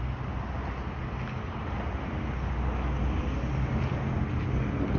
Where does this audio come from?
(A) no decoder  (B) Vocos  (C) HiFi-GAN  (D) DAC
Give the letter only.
A